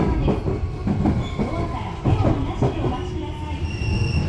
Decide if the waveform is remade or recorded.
recorded